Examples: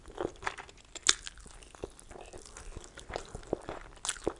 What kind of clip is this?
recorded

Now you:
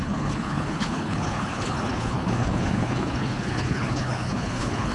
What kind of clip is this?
remade